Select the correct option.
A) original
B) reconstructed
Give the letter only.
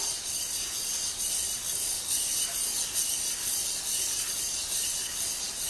A